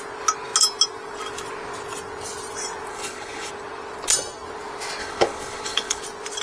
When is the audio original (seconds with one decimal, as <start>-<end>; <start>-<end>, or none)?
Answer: 0.0-2.9; 3.5-5.0; 6.0-6.4